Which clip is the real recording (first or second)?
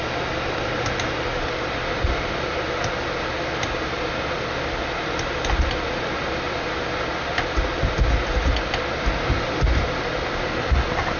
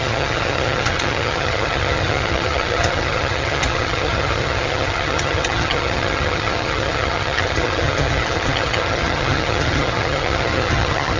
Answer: first